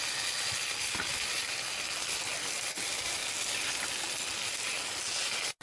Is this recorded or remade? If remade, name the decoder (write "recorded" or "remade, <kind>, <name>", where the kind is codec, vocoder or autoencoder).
recorded